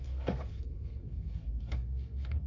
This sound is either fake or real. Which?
fake